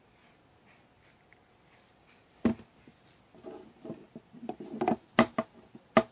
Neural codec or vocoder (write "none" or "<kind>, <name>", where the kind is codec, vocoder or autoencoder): none